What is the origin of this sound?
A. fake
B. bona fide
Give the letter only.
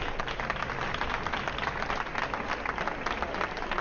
B